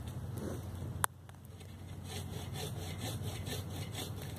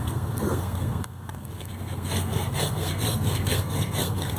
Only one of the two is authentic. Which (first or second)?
first